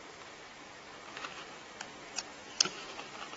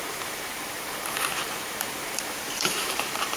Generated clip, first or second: second